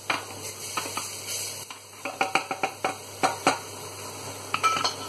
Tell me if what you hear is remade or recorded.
recorded